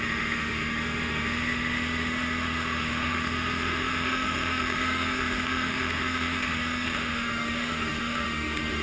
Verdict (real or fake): fake